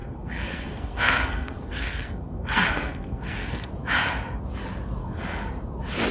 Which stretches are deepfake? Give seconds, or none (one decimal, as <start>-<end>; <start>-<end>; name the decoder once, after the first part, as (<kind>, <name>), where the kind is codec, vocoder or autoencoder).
0.0-3.7 (codec, SNAC); 5.0-5.5

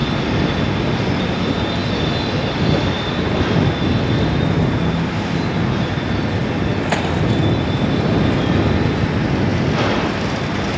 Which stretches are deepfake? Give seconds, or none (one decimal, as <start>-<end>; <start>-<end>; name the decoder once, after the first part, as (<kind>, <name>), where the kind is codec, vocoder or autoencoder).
9.5-10.2 (vocoder, BigVGAN v2)

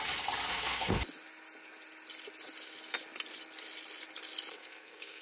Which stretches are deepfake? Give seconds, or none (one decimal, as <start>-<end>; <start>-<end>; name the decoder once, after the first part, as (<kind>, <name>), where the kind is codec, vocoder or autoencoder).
0.5-1.0 (codec, SNAC); 4.5-5.2

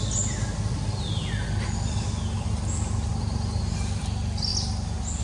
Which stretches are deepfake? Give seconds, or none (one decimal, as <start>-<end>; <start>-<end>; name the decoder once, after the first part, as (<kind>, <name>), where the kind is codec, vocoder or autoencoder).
none

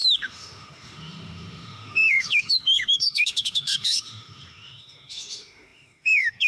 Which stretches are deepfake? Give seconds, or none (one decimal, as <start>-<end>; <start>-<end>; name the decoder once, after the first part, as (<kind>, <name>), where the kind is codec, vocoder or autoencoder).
0.0-6.5 (autoencoder, DAC-VAE)

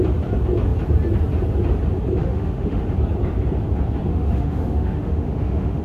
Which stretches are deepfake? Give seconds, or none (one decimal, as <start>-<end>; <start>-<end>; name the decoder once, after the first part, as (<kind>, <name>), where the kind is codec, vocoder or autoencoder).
2.2-2.8 (autoencoder, DAC-VAE); 4.1-5.8

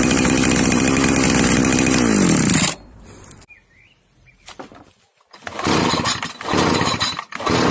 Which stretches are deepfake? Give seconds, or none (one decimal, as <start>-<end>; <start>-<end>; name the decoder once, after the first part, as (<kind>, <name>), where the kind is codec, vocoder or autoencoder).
0.0-7.7 (vocoder, BigVGAN v2)